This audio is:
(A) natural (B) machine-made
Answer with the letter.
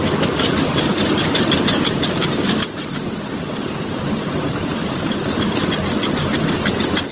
A